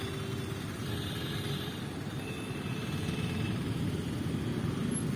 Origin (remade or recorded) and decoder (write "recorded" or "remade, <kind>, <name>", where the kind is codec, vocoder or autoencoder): recorded